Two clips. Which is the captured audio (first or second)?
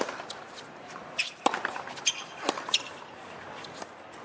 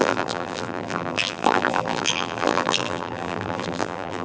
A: first